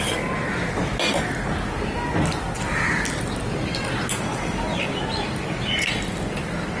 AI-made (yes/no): no